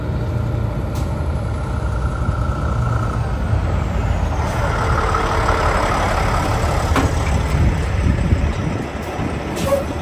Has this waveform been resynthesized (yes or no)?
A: no